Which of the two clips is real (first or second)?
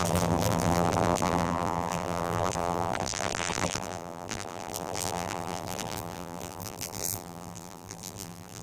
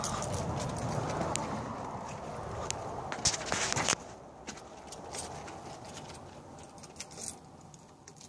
second